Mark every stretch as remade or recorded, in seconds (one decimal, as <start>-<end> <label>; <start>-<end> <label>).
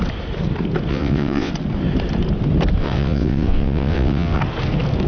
0.0-0.9 recorded; 0.9-1.5 remade; 1.5-2.8 recorded; 2.8-4.4 remade; 4.4-5.1 recorded